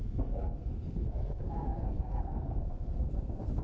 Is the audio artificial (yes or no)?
yes